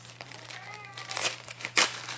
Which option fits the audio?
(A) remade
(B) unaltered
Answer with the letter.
A